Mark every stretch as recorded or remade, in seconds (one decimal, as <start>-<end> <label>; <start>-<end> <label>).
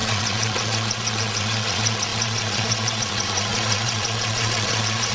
0.0-5.1 remade